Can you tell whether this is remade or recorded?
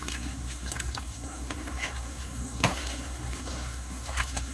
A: remade